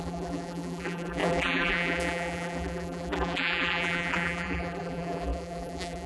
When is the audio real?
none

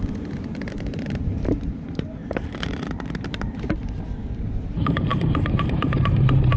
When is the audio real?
none

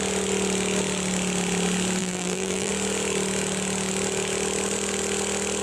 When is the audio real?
0.0-2.0; 2.7-5.6

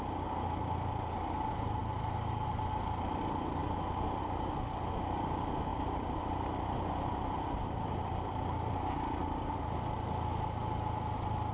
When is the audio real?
0.0-1.8; 3.2-5.7; 9.6-11.5

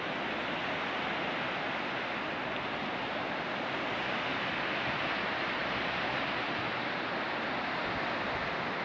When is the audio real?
0.0-8.8